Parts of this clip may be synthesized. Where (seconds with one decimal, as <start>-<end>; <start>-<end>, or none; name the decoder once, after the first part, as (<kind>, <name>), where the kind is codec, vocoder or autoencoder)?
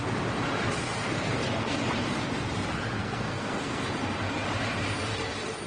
1.0-1.8 (codec, SNAC); 3.0-3.8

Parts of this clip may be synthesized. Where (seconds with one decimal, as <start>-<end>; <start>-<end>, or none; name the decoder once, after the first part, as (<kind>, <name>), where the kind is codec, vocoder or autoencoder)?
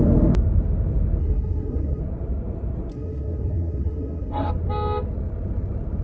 1.2-2.0 (codec, SNAC); 2.9-4.5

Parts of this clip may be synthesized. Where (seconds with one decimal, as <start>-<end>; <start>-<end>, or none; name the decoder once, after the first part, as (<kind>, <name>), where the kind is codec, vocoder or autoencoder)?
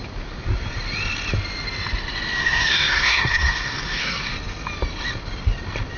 2.4-4.3 (codec, SNAC)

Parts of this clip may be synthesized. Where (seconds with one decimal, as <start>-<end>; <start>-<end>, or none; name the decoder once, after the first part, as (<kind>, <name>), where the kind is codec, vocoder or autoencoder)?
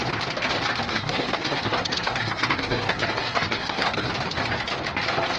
0.9-4.1 (codec, SNAC)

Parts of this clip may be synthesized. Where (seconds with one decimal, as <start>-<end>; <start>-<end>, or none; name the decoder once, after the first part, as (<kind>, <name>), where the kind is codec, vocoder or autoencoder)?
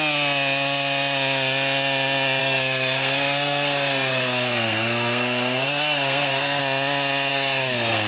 2.4-6.6 (codec, SNAC); 7.3-8.1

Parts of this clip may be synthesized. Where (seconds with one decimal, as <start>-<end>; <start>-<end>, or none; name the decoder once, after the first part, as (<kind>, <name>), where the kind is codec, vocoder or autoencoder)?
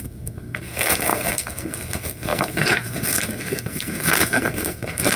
0.0-5.2 (codec, SNAC)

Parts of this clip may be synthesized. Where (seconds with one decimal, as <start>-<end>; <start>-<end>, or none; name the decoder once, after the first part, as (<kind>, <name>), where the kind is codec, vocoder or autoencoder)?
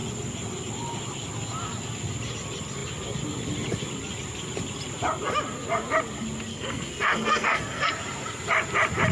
6.5-7.9 (codec, SNAC)